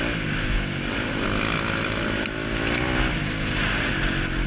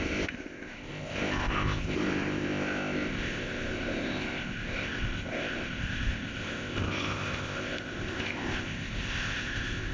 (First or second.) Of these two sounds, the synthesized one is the second